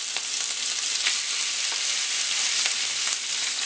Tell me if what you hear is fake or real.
real